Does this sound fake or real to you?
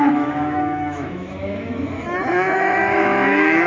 fake